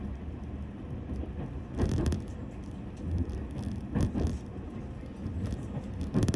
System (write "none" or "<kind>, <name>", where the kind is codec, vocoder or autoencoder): none